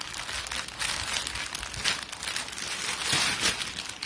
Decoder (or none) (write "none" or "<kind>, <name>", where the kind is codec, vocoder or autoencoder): none